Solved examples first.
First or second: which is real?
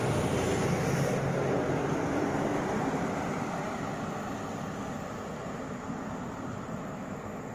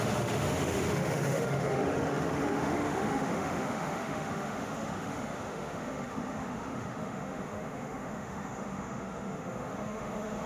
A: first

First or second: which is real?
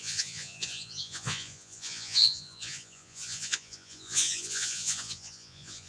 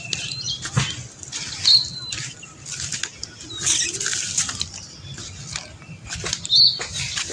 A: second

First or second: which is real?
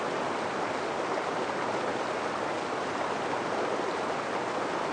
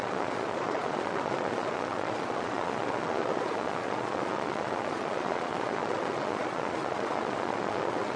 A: first